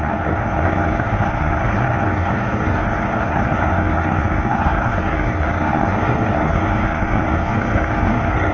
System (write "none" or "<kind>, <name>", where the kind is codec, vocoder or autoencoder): codec, SNAC